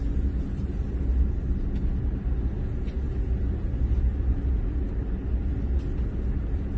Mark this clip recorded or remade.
recorded